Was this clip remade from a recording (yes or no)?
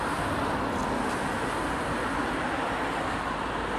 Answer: no